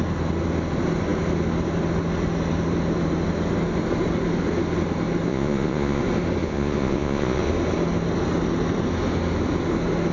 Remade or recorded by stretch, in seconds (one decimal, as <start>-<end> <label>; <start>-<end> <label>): 0.0-5.3 recorded; 5.3-6.0 remade; 6.0-6.4 recorded; 6.4-7.5 remade; 7.5-10.1 recorded